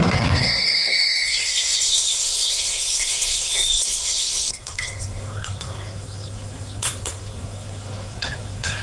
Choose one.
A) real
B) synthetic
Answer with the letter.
B